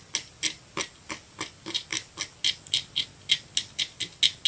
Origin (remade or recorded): recorded